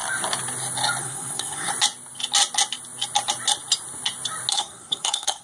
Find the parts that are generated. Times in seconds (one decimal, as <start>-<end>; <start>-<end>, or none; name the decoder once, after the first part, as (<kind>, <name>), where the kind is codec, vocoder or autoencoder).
1.0-1.7 (codec, SNAC); 4.5-5.4